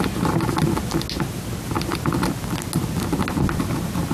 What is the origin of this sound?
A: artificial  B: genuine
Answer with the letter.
B